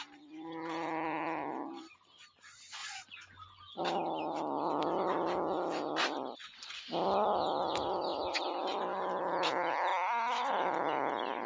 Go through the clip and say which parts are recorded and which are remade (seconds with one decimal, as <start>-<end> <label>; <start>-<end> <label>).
0.0-2.8 recorded; 2.8-3.8 remade; 3.8-11.5 recorded